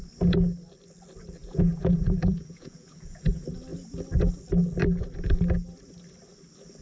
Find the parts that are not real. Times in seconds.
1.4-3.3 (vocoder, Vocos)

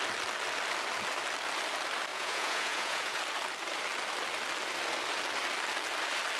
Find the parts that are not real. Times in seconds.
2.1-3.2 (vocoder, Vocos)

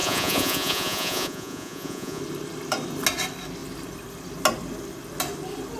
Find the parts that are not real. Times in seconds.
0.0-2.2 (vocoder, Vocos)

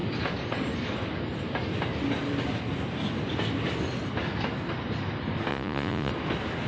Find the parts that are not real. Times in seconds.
5.5-6.1 (vocoder, Vocos)